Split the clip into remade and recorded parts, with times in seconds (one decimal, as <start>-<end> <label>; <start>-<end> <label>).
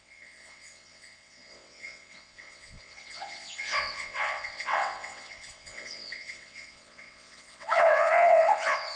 0.0-9.0 remade